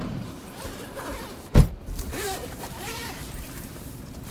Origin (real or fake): fake